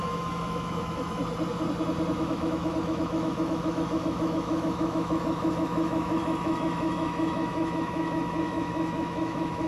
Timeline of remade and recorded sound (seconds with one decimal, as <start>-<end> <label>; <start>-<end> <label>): 0.0-1.2 remade; 1.2-2.2 recorded; 2.2-9.7 remade